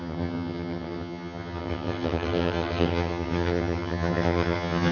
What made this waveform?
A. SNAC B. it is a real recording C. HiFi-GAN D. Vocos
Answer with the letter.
C